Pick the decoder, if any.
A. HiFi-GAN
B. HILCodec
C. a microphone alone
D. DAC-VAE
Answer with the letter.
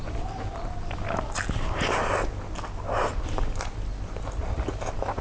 C